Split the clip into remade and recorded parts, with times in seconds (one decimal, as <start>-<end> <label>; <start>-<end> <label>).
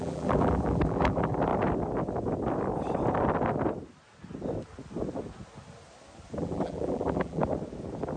0.0-1.5 remade; 1.5-6.4 recorded; 6.4-7.4 remade; 7.4-8.2 recorded